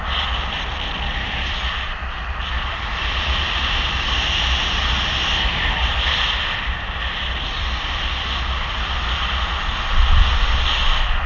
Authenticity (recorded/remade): recorded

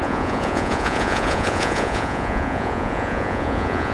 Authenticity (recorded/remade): remade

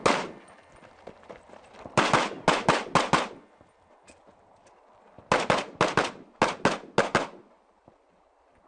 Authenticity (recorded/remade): recorded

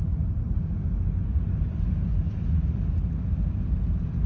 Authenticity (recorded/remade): recorded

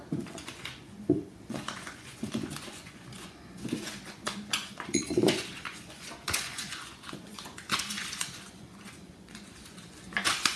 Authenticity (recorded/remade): remade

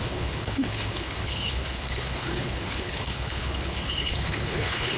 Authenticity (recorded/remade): remade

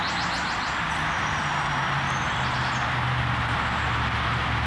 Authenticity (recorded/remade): recorded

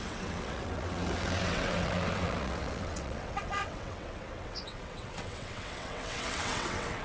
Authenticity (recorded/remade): remade